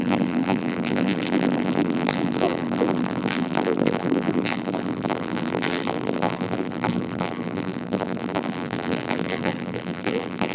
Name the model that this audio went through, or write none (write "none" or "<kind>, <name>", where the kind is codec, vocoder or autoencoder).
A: vocoder, BigVGAN v2